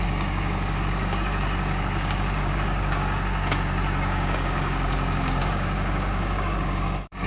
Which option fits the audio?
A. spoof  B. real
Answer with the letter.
A